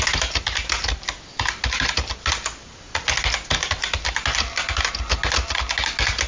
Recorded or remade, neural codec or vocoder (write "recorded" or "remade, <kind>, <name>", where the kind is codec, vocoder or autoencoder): recorded